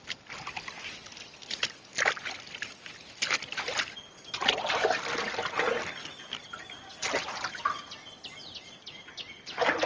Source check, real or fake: real